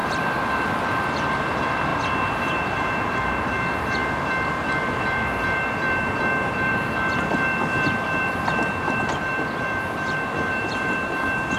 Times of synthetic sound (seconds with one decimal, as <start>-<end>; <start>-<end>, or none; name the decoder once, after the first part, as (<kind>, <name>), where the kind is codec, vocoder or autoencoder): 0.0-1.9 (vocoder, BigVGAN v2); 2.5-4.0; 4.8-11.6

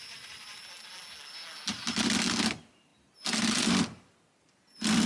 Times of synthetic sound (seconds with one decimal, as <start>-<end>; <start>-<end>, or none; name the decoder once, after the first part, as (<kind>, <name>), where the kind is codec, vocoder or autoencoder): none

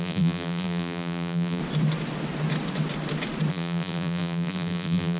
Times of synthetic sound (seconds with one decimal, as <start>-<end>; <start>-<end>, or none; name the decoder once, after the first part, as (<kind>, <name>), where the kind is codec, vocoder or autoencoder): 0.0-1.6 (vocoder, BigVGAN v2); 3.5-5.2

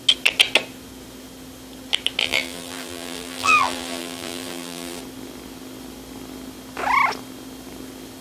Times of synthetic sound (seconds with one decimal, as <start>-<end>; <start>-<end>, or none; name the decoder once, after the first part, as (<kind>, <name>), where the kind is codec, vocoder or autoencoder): 2.2-5.0 (vocoder, BigVGAN v2)